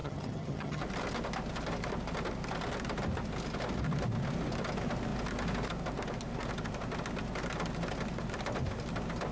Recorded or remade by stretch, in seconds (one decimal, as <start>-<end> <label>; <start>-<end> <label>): 0.0-0.8 remade; 0.8-9.3 recorded